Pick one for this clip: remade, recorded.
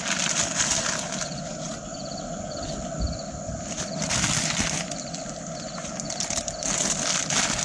recorded